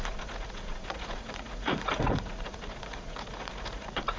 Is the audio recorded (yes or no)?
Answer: no